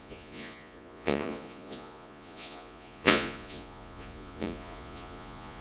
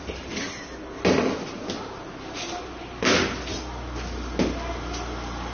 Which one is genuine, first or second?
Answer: second